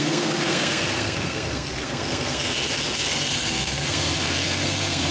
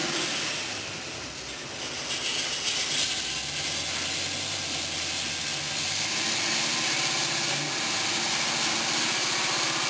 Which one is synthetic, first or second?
first